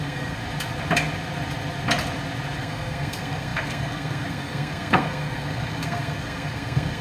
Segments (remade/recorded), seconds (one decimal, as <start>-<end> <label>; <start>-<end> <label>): 0.0-0.4 remade; 0.4-2.6 recorded; 2.6-7.0 remade